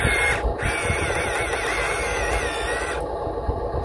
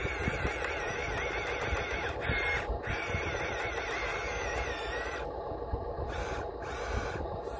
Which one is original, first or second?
first